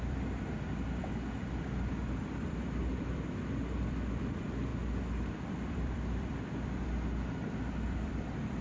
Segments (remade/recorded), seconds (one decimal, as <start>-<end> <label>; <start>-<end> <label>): 0.0-4.7 remade; 4.7-5.5 recorded; 5.5-8.6 remade